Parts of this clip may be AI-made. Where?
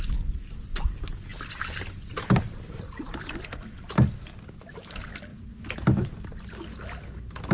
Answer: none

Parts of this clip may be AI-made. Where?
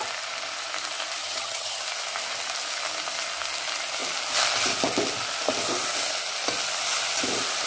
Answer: 1.2-1.8 (vocoder, HiFi-GAN)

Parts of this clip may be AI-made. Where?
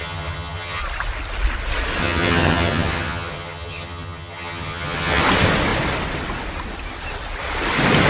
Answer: 0.0-0.8 (vocoder, HiFi-GAN); 2.0-5.2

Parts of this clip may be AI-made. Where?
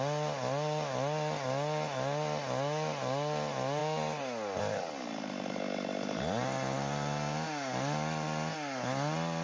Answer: none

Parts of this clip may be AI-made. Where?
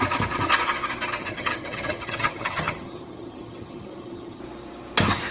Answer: 1.2-4.4 (vocoder, HiFi-GAN)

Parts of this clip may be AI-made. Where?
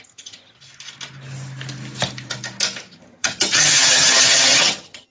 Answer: 0.0-0.6 (vocoder, HiFi-GAN); 2.9-5.1